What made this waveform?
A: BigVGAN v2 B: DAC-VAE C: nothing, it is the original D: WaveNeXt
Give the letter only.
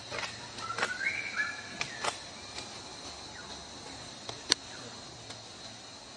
C